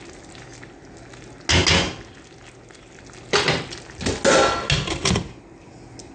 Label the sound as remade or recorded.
recorded